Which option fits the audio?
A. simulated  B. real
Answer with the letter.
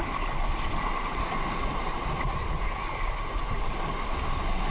B